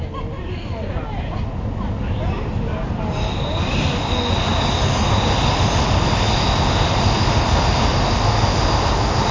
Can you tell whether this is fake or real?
real